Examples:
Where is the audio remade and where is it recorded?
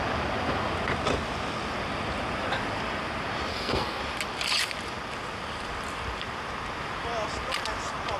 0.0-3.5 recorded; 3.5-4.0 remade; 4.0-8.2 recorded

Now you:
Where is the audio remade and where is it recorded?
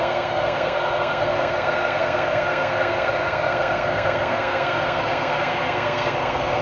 0.0-6.6 remade